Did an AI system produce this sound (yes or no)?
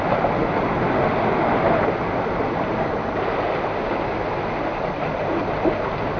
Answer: no